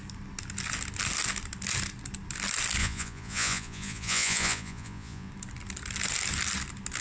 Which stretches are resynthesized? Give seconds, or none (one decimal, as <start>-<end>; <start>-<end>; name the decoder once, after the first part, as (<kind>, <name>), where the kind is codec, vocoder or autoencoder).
2.8-5.3 (vocoder, Vocos)